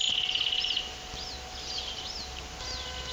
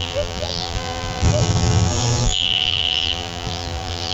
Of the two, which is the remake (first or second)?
second